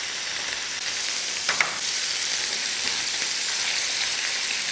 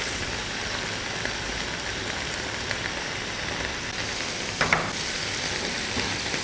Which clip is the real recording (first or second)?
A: second